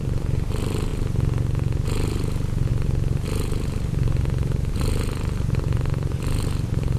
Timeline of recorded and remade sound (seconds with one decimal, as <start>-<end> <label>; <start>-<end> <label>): 0.0-0.9 remade; 0.9-2.7 recorded; 2.7-7.0 remade